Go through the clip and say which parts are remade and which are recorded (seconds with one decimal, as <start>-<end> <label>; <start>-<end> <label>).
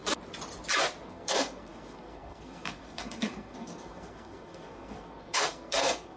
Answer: 0.0-1.1 recorded; 1.1-6.2 remade